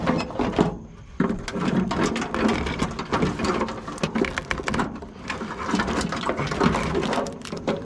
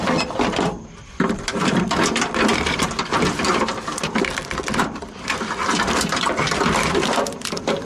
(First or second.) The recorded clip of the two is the first